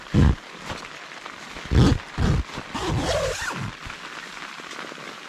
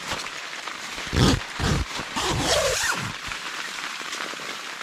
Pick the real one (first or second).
first